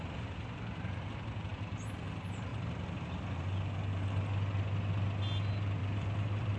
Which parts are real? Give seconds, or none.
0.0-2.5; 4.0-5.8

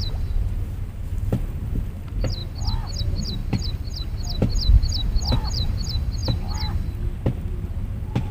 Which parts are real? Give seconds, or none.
1.0-1.7; 2.4-3.0; 3.4-5.4; 6.2-8.3

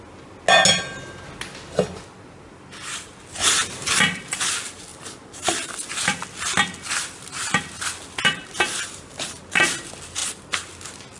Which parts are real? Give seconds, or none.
0.0-3.4; 4.0-4.9; 5.7-8.7; 9.4-11.2

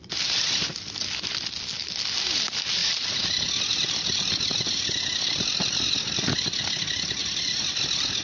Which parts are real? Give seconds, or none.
0.0-8.2

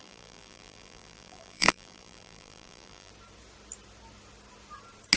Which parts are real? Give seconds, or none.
3.1-5.2

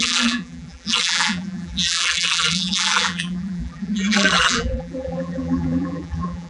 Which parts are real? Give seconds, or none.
none

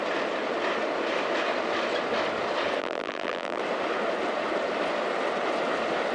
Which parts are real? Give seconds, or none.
0.0-2.8; 3.6-6.1

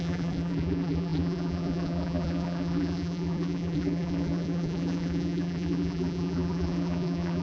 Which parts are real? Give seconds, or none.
none